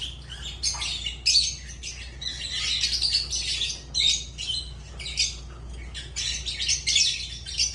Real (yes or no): yes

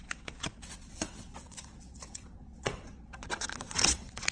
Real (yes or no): no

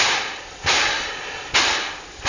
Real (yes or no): yes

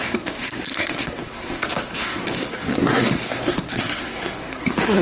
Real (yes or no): no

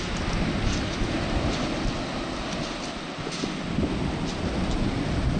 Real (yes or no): yes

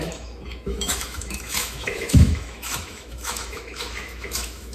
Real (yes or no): no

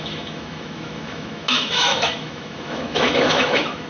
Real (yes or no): no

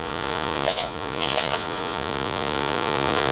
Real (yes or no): no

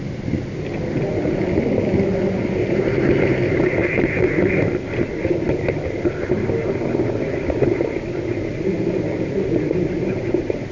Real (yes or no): yes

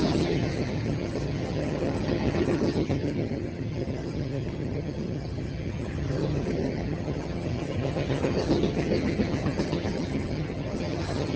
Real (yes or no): no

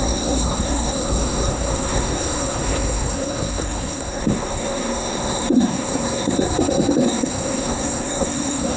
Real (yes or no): no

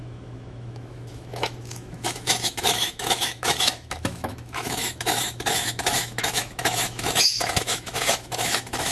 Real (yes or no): no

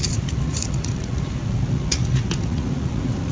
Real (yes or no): no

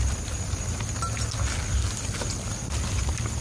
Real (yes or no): yes